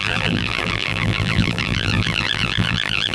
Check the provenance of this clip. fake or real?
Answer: fake